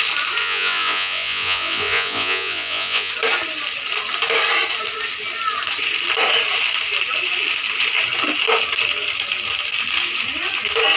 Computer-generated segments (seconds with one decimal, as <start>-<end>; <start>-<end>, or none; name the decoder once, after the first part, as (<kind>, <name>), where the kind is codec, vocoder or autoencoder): 0.4-3.1 (vocoder, Vocos)